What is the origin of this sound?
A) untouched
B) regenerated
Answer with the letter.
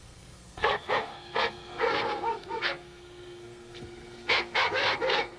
B